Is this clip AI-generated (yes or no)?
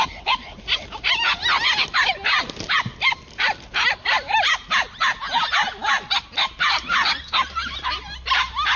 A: no